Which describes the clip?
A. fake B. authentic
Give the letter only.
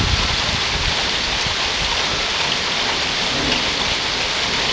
B